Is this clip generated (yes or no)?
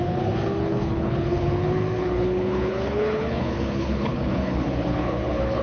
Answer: yes